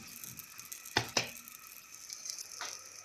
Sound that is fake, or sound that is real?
real